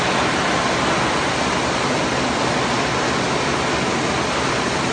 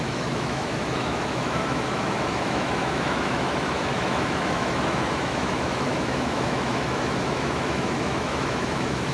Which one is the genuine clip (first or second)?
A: first